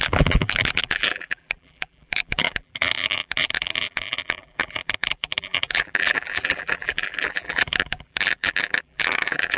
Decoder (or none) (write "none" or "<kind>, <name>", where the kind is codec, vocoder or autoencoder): vocoder, BigVGAN v2